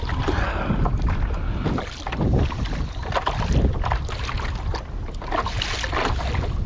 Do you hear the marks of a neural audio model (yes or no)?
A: no